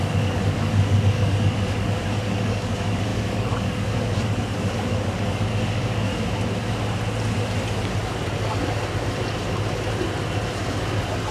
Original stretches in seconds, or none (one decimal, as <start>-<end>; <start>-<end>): 6.1-11.3